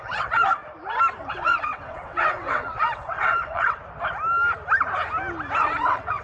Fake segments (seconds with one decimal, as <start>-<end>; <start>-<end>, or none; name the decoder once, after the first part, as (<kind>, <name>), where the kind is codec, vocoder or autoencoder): 0.0-0.6 (vocoder, WaveNeXt); 1.3-3.8; 5.6-6.2